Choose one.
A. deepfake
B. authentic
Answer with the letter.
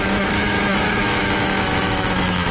A